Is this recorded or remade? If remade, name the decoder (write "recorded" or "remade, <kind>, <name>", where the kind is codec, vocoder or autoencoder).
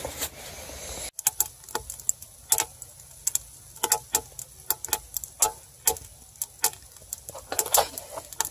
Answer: recorded